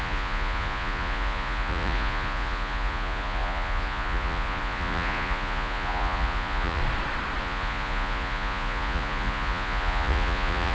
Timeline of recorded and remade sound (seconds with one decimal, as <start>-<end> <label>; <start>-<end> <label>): 0.0-6.8 remade; 6.8-7.4 recorded; 7.4-10.7 remade